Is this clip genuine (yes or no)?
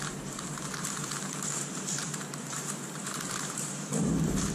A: no